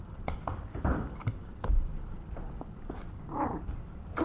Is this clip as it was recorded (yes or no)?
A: no